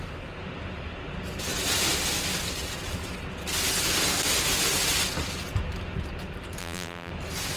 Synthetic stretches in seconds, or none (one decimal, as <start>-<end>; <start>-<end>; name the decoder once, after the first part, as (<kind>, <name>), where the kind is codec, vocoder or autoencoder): 6.6-7.1 (vocoder, BigVGAN v2)

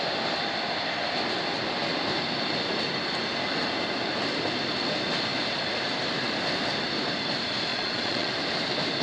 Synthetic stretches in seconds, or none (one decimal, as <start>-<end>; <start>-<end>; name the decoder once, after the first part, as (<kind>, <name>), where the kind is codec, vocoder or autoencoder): 7.7-8.3 (vocoder, Vocos)